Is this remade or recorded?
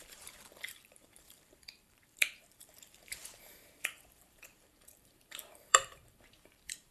remade